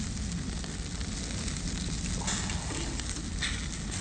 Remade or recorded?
recorded